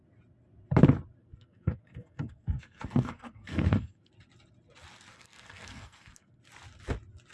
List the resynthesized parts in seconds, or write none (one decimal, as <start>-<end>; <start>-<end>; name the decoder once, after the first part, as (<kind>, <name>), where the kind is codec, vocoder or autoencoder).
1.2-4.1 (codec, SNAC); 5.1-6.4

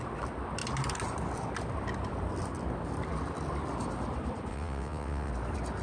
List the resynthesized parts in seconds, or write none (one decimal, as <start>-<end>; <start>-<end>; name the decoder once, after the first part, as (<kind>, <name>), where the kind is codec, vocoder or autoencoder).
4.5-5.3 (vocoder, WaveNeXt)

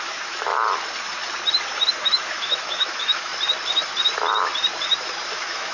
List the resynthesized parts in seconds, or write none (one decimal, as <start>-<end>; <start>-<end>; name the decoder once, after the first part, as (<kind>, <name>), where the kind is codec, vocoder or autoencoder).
0.0-0.5 (autoencoder, DAC-VAE); 1.9-3.3; 5.3-5.7